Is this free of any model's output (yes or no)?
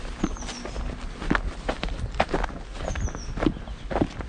yes